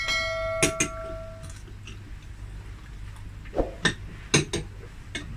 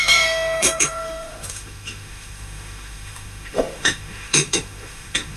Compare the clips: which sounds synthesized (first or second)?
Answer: second